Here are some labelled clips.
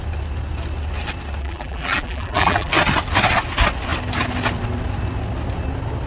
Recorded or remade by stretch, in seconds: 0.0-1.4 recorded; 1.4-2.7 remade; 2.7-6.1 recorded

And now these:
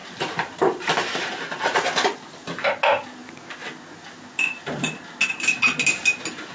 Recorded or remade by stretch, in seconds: 0.0-1.8 remade; 1.8-6.5 recorded

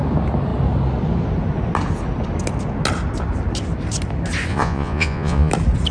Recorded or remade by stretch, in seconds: 0.0-4.5 recorded; 4.5-5.5 remade; 5.5-5.9 recorded

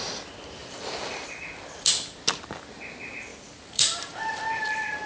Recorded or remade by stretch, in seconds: 0.0-0.6 recorded; 0.6-1.3 remade; 1.3-3.3 recorded; 3.3-5.1 remade

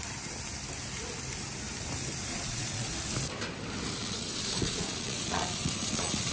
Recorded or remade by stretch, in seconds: 0.0-2.3 recorded; 2.3-2.9 remade; 2.9-4.0 recorded; 4.0-6.3 remade

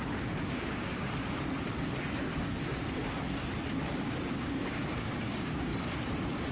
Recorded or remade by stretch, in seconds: 0.0-0.9 remade; 0.9-4.0 recorded; 4.0-5.7 remade; 5.7-6.5 recorded

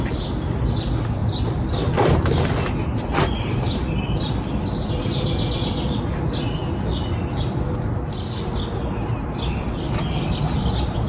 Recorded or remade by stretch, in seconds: 0.0-11.1 recorded